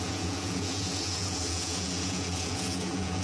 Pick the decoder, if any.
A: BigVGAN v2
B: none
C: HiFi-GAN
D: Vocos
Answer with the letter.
D